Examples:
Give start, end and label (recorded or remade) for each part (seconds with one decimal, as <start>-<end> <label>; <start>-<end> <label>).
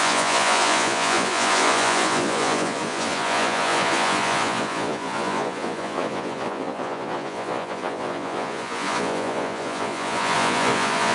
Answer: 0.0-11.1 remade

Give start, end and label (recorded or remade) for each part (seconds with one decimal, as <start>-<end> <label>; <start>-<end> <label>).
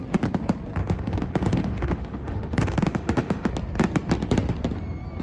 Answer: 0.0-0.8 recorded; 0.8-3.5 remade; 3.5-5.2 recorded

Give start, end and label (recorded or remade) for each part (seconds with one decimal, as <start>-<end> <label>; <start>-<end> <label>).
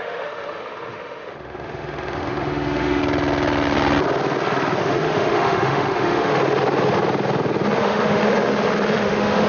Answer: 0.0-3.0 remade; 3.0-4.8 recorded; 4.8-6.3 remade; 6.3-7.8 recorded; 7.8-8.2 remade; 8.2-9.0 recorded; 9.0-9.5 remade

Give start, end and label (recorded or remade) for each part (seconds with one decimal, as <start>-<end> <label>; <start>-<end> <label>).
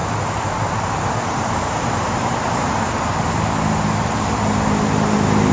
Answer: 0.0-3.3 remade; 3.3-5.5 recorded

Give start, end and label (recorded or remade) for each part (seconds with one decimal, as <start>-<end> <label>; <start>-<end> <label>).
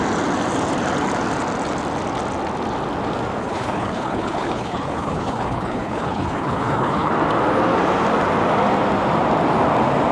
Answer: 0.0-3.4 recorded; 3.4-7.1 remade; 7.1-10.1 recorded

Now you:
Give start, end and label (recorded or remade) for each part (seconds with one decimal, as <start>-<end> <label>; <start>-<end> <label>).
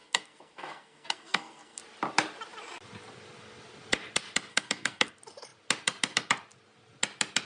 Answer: 0.0-1.8 remade; 1.8-4.5 recorded; 4.5-5.1 remade; 5.1-7.5 recorded